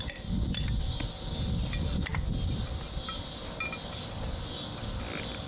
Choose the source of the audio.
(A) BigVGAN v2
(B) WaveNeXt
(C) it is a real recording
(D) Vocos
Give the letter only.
C